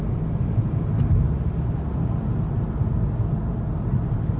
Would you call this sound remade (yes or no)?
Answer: no